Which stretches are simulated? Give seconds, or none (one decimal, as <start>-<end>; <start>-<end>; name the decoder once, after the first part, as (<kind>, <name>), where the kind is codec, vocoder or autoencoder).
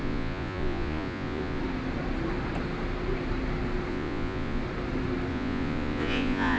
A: 0.0-1.6 (vocoder, Vocos); 3.9-4.6; 5.3-6.6